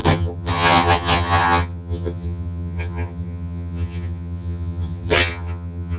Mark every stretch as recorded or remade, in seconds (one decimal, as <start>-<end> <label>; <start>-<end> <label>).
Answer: 0.0-6.0 remade